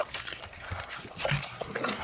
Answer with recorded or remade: remade